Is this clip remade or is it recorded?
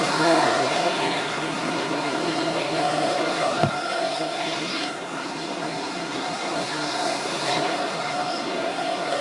remade